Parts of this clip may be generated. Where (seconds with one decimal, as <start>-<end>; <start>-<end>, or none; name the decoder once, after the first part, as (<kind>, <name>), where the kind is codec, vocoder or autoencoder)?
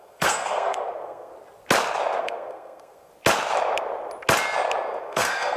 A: 0.0-1.3 (codec, SNAC); 2.2-3.1; 5.0-5.6